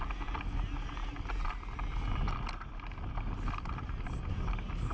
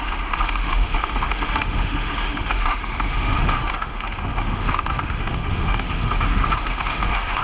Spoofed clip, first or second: second